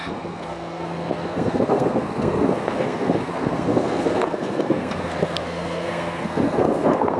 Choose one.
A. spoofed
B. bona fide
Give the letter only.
A